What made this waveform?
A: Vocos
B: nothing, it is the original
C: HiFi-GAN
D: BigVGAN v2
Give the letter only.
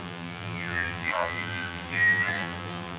D